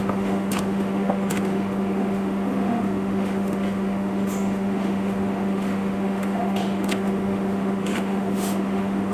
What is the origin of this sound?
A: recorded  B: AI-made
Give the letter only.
B